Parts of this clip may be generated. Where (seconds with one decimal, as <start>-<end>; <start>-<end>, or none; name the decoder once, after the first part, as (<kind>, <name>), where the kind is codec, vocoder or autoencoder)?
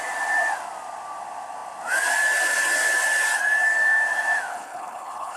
4.5-5.4 (codec, HILCodec)